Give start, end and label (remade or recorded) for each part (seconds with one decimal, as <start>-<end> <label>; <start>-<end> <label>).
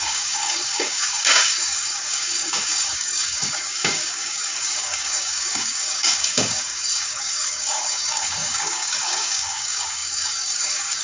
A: 0.0-11.0 remade